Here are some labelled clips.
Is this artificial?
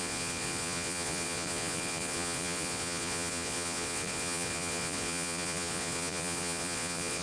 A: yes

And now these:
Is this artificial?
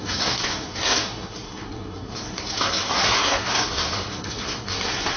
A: yes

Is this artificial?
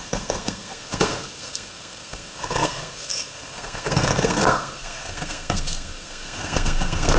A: yes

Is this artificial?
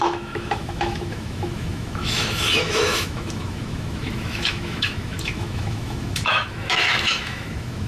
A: yes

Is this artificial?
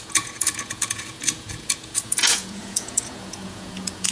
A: yes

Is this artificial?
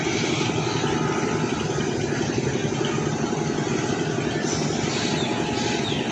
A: no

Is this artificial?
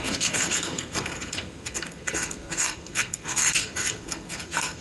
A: yes